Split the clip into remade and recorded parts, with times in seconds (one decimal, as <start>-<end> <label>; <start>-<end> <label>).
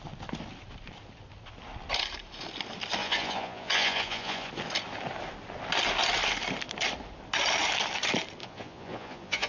0.0-3.0 recorded; 3.0-4.5 remade; 4.5-8.4 recorded; 8.4-9.5 remade